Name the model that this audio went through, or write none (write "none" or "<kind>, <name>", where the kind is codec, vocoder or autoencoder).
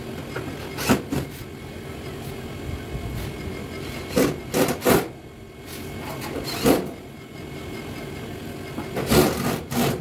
none